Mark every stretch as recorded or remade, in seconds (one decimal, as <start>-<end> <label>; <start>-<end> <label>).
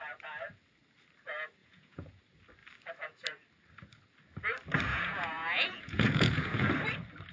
0.0-1.6 recorded; 1.6-2.2 remade; 2.2-4.9 recorded; 4.9-6.7 remade; 6.7-7.3 recorded